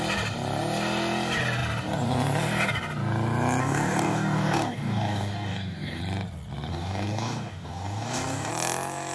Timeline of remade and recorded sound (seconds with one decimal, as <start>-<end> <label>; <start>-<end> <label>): 0.0-3.6 recorded; 3.6-6.0 remade; 6.0-6.7 recorded; 6.7-8.5 remade; 8.5-9.1 recorded